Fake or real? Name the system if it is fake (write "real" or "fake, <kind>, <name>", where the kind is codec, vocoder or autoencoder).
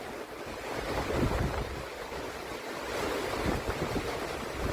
real